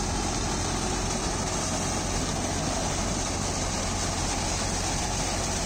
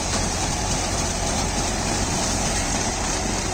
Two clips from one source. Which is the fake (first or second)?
second